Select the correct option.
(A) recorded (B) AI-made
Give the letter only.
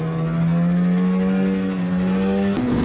A